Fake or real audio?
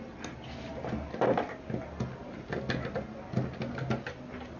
real